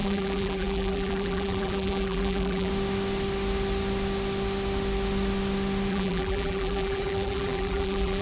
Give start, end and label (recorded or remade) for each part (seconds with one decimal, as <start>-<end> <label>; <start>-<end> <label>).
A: 0.0-2.7 remade; 2.7-5.9 recorded; 5.9-8.2 remade